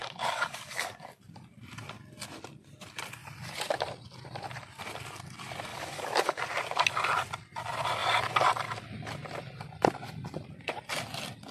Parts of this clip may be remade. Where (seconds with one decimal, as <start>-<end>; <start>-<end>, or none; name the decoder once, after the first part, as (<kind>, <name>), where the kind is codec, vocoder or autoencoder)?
0.0-1.2 (codec, DAC); 5.7-6.4